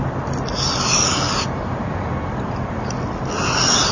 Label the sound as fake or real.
real